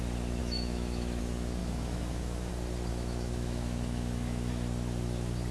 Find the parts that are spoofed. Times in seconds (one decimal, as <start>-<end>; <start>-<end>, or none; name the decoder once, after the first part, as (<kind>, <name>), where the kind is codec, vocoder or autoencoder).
0.4-1.2 (autoencoder, DAC-VAE); 1.6-2.5; 2.9-4.5